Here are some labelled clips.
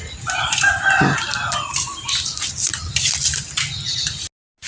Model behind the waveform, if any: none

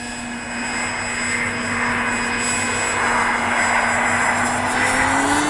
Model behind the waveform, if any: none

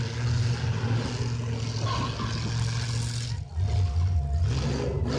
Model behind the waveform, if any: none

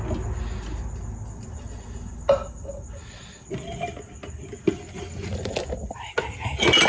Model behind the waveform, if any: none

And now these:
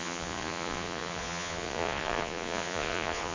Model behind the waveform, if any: vocoder, Vocos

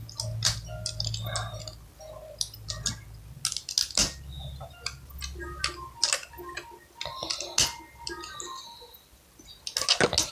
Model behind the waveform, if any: none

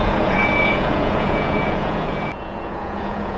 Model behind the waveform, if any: vocoder, Vocos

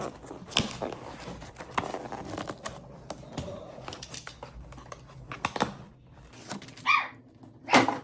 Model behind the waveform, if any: none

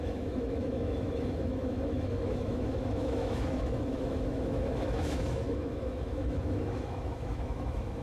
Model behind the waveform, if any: autoencoder, DAC-VAE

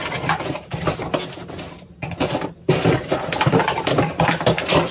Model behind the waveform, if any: vocoder, BigVGAN v2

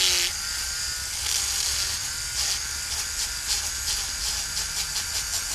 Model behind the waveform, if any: none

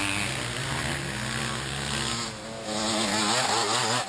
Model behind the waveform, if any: none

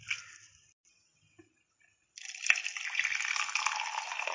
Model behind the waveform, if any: none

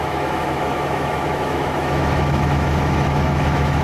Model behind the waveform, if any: autoencoder, DAC-VAE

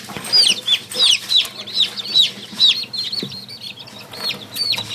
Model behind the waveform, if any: none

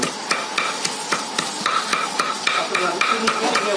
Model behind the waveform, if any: none